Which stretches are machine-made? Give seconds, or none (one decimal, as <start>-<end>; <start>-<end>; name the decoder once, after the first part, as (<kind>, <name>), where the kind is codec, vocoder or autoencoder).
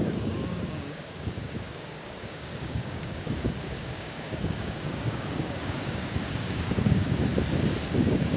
0.0-7.3 (codec, DAC); 8.0-8.4